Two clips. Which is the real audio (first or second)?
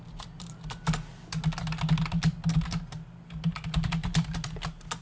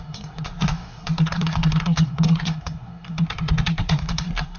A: first